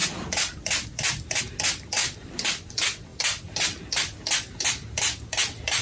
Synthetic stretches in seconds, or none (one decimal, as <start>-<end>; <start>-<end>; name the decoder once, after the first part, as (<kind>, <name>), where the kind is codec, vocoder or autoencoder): 0.0-1.4 (vocoder, BigVGAN v2); 2.0-2.7